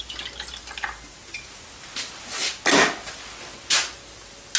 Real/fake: real